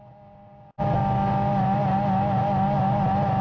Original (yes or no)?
yes